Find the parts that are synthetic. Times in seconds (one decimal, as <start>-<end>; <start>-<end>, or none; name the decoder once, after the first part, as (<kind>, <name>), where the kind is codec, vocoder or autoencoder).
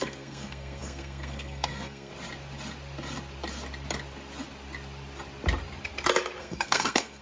0.0-2.1 (codec, SNAC); 6.4-7.2